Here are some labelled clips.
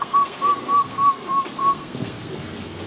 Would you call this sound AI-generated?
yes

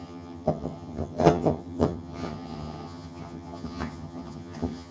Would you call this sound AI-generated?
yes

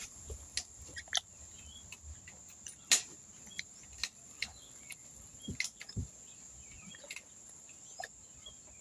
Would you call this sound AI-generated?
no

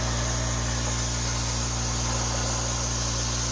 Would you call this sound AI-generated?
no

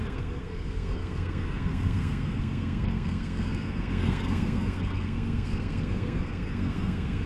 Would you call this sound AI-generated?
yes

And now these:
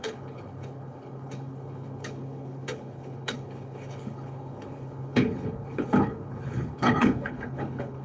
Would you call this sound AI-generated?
yes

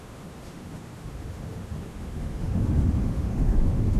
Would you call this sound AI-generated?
yes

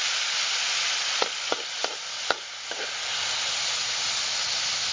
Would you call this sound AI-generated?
no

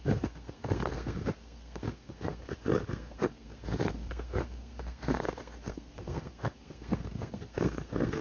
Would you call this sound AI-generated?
yes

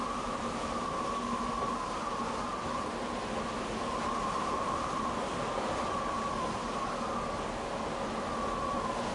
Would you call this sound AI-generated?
no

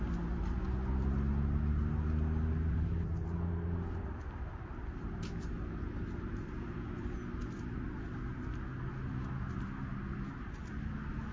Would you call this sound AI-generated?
no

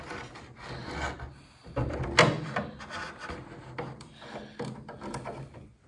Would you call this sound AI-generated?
no